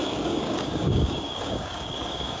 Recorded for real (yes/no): no